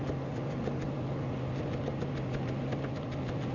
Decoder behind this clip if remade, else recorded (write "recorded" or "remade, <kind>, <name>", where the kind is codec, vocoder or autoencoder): recorded